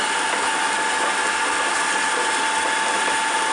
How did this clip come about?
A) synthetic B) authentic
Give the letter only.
B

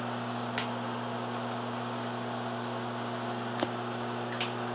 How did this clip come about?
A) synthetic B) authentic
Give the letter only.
B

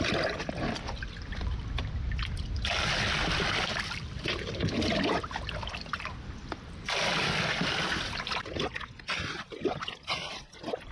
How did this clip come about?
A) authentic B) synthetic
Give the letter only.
A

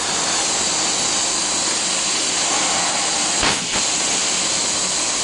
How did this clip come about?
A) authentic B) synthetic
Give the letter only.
A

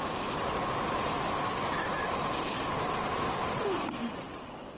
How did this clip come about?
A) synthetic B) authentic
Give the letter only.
B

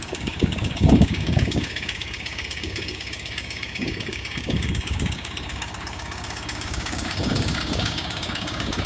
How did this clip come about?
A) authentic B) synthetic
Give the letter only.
B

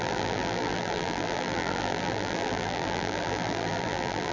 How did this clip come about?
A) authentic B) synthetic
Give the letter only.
B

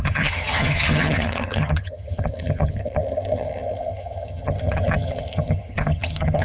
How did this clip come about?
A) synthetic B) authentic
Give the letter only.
A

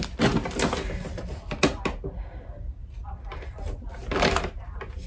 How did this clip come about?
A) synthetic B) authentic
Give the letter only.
B